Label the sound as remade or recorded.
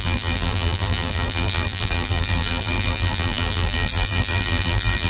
remade